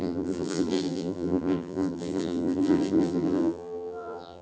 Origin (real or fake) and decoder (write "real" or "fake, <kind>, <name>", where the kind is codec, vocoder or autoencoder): fake, vocoder, BigVGAN v2